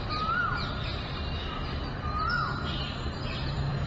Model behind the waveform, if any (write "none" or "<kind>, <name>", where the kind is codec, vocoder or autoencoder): vocoder, BigVGAN v2